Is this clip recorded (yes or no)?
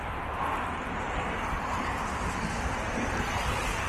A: yes